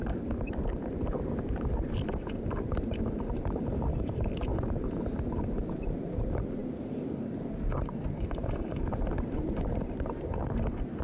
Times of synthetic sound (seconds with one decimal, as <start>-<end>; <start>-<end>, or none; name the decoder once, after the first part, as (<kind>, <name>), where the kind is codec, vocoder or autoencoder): 0.0-11.0 (vocoder, BigVGAN v2)